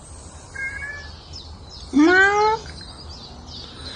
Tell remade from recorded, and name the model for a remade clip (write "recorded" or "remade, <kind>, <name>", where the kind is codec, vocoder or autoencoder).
recorded